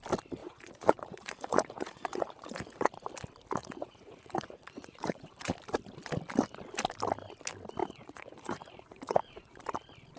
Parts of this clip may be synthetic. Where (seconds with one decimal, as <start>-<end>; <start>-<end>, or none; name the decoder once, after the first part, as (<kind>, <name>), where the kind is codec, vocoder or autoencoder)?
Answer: 0.4-2.9 (vocoder, Vocos); 3.6-5.5; 7.8-9.6